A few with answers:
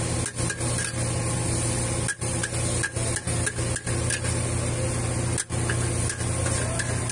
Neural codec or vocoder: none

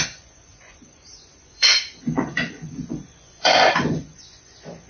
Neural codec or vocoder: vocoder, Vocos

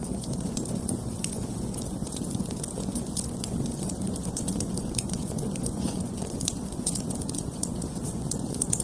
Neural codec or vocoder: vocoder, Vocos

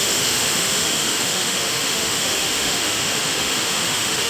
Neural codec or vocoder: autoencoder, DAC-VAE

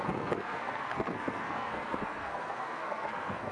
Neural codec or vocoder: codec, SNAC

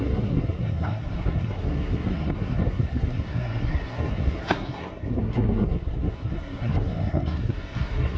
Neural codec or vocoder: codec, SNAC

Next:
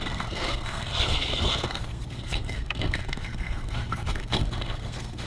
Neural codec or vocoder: codec, SNAC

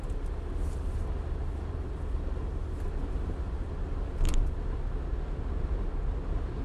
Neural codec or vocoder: none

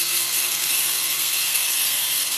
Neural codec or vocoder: codec, SNAC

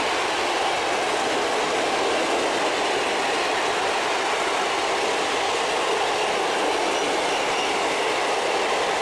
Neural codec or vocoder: none